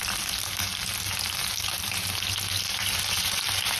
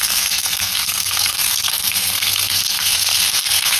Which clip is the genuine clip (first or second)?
first